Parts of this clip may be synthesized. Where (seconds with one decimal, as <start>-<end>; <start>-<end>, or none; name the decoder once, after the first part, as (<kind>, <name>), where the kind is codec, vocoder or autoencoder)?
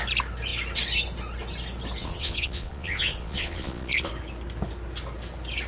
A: 2.0-4.1 (vocoder, Vocos)